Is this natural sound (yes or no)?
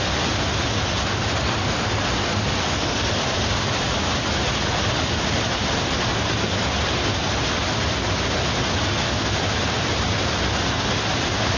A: yes